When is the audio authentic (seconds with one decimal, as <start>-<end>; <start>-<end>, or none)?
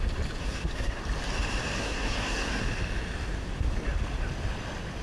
0.0-0.4; 1.0-1.8; 2.6-5.0